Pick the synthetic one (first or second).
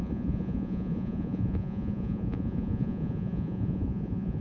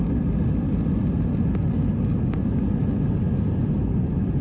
first